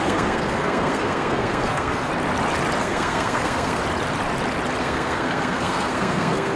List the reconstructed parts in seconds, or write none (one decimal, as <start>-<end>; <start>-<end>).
0.0-2.1; 2.8-3.8; 4.8-6.6